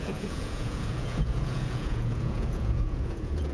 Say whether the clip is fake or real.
fake